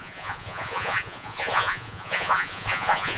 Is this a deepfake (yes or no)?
yes